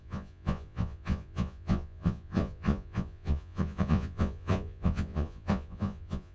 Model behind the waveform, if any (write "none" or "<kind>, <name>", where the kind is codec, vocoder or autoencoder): vocoder, Vocos